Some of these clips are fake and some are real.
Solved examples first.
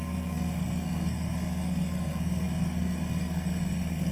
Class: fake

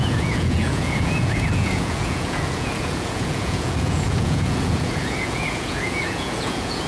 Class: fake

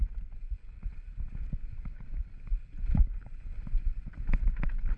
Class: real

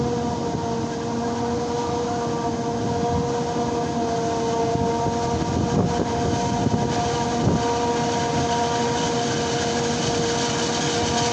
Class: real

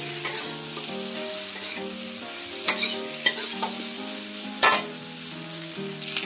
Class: real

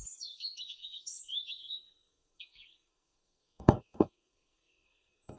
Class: fake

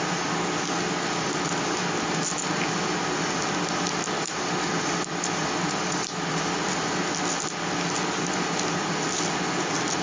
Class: real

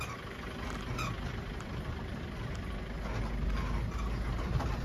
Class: real